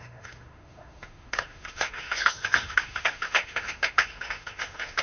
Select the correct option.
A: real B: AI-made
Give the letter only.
B